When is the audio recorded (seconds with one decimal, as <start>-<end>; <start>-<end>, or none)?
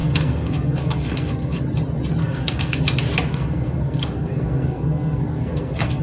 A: 1.6-2.2; 2.8-3.3